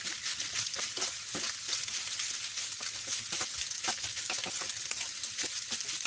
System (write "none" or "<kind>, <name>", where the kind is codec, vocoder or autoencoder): none